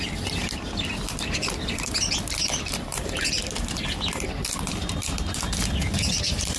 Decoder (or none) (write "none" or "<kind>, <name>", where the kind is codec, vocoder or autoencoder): vocoder, BigVGAN v2